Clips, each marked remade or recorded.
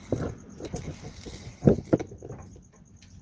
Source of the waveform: recorded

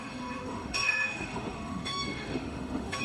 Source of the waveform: remade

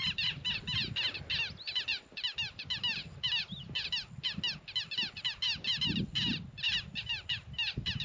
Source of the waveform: recorded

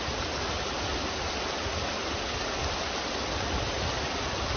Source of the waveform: recorded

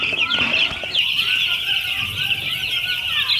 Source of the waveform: recorded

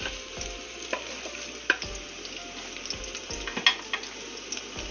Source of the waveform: recorded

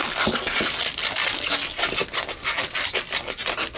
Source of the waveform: recorded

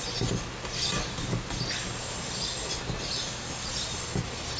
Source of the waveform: recorded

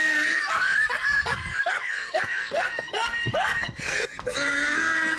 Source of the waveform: remade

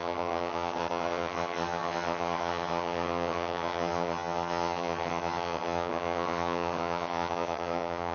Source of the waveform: remade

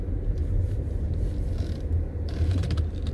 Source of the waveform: remade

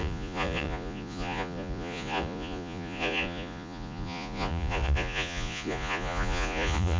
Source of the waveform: remade